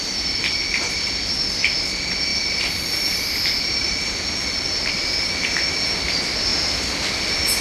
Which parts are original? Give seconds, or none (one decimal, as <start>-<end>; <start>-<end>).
0.0-7.6